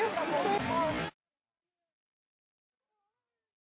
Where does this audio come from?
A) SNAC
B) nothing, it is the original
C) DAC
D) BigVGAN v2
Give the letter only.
D